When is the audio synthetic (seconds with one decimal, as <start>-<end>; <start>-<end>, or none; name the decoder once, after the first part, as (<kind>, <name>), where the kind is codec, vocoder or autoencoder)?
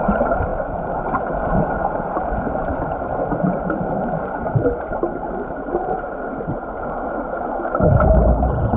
none